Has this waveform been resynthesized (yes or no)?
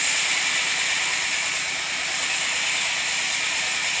no